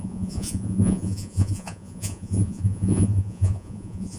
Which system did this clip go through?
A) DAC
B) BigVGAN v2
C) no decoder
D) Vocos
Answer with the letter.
D